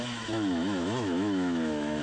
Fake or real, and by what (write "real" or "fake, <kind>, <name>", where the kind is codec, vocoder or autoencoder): fake, autoencoder, DAC-VAE